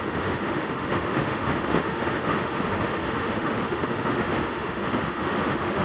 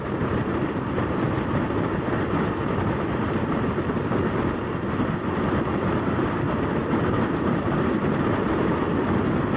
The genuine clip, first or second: second